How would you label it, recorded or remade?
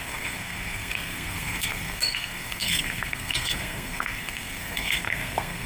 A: remade